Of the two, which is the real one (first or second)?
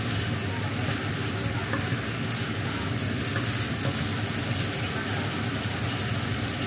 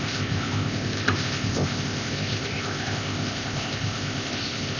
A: first